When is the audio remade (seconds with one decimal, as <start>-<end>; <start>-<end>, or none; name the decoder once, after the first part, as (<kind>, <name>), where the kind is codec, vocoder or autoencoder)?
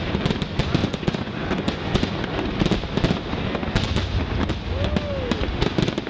0.8-2.1 (vocoder, Vocos)